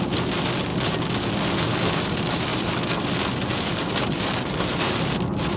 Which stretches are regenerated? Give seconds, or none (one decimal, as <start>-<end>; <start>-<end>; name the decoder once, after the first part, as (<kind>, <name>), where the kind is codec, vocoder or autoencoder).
none